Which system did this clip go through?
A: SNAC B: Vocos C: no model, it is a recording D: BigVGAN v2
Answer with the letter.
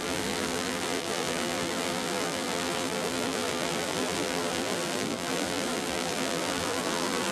D